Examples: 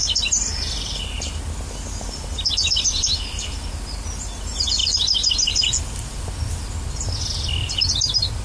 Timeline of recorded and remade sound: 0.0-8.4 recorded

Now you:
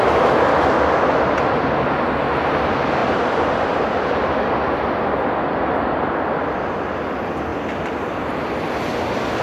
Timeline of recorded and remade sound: 0.0-9.4 recorded

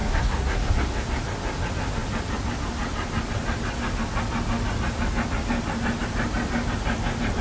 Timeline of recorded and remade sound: 0.0-0.7 remade; 0.7-7.4 recorded

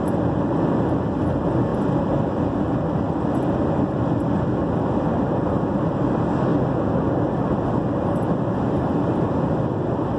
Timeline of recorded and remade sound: 0.0-10.2 recorded

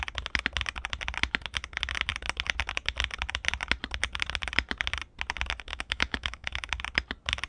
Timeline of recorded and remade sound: 0.0-5.7 recorded; 5.7-6.8 remade; 6.8-7.5 recorded

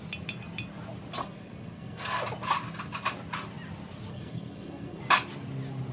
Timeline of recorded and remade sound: 0.0-1.2 recorded; 1.2-2.2 remade; 2.2-4.1 recorded; 4.1-5.0 remade; 5.0-5.9 recorded

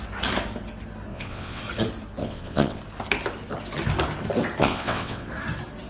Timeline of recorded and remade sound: 0.0-1.1 recorded; 1.1-1.6 remade; 1.6-2.2 recorded; 2.2-2.8 remade; 2.8-4.6 recorded; 4.6-5.3 remade; 5.3-5.9 recorded

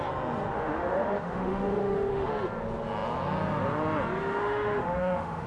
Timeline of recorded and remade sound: 0.0-0.5 recorded; 0.5-2.3 remade; 2.3-4.2 recorded; 4.2-5.5 remade